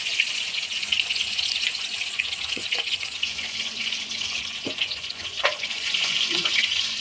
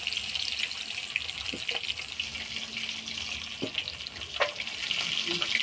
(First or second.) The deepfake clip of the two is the first